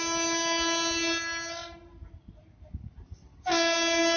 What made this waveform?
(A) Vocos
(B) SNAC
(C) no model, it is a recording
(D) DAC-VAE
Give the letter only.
C